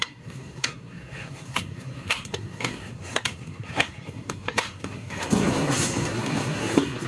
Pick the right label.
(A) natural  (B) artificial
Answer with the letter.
B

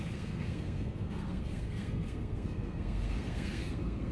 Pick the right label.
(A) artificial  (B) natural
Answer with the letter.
A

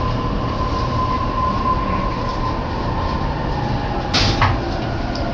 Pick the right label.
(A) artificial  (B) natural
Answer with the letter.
B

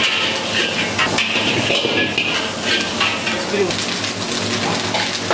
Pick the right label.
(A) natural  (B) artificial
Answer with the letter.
A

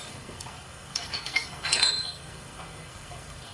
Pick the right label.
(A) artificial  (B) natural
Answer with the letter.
A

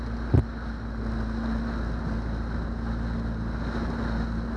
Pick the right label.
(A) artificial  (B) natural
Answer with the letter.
B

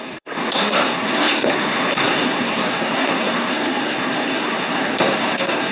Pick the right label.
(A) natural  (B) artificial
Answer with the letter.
B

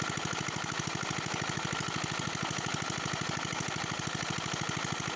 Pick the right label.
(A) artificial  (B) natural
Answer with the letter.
B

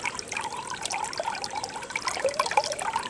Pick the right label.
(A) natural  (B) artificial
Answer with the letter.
A